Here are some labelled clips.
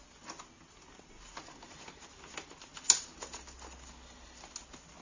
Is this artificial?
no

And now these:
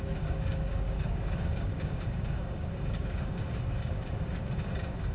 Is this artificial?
yes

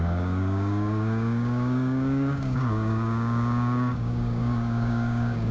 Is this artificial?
yes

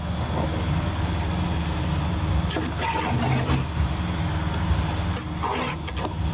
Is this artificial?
no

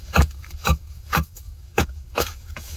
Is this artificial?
yes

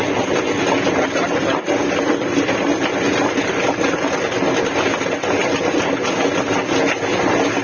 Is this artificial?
no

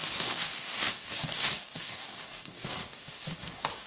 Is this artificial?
yes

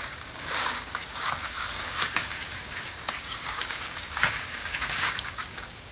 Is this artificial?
yes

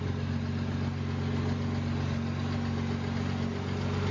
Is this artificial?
no